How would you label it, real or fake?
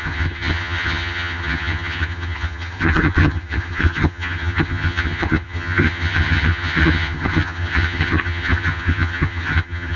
fake